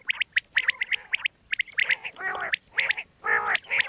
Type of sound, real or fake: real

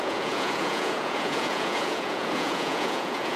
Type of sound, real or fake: fake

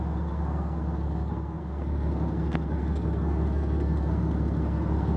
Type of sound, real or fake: fake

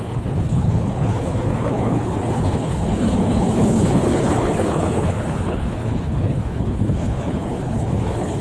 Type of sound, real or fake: fake